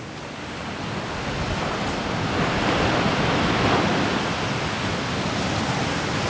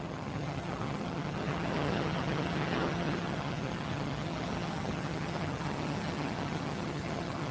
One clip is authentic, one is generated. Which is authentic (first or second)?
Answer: first